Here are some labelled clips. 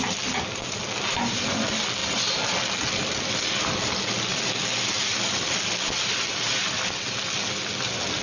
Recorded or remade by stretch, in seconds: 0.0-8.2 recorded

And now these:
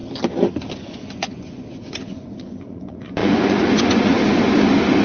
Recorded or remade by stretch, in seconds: 0.0-0.7 recorded; 0.7-4.2 remade; 4.2-5.0 recorded